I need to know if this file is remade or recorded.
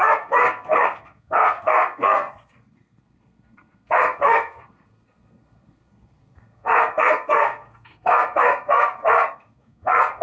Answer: remade